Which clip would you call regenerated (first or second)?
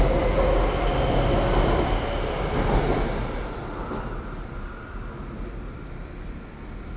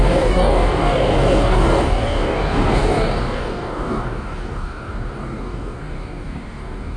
second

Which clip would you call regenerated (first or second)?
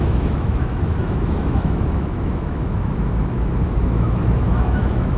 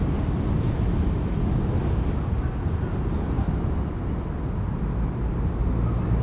first